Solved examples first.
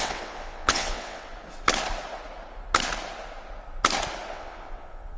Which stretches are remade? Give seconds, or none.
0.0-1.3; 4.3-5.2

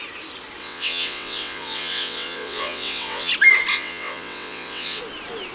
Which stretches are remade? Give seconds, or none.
0.6-3.3; 3.7-5.0

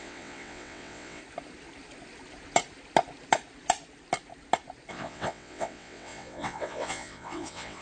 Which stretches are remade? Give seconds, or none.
0.0-1.2; 4.9-7.8